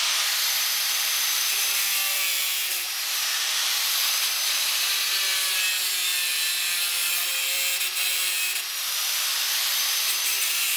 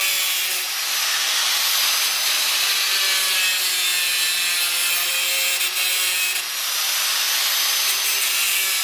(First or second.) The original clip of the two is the second